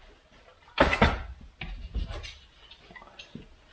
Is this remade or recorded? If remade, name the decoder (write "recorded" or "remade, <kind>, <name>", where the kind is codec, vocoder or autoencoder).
recorded